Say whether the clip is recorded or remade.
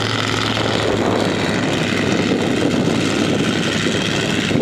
recorded